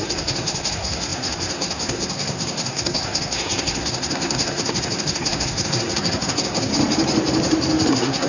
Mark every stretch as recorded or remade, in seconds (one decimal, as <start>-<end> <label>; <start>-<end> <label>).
0.0-6.7 remade; 6.7-7.9 recorded; 7.9-8.3 remade